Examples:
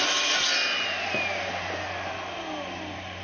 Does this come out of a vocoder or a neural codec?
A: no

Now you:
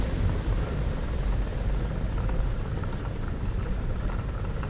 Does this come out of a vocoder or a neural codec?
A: yes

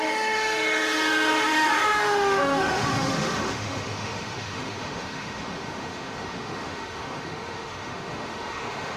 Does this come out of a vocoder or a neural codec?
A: yes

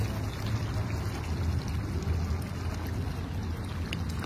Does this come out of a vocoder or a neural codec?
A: no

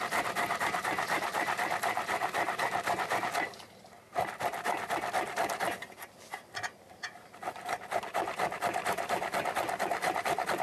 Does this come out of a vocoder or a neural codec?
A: no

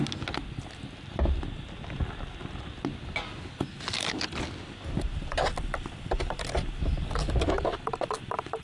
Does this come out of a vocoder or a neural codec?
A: no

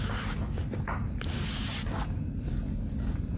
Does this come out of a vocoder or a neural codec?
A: no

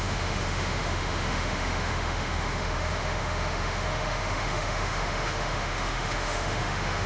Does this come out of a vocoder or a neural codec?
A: yes